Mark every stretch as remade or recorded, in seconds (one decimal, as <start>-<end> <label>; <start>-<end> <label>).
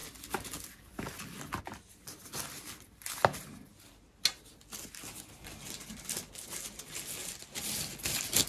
0.0-8.5 recorded